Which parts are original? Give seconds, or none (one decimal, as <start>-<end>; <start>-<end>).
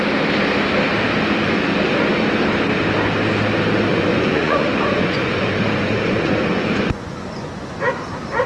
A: 0.0-3.9; 7.7-8.5